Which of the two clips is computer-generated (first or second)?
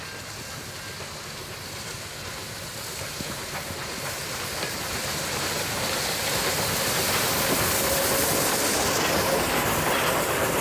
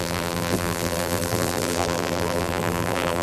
second